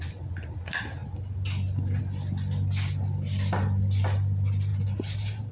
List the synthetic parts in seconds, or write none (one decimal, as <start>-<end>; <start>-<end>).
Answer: none